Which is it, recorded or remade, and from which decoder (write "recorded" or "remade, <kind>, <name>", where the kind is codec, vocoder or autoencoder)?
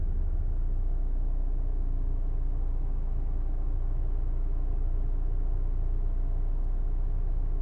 recorded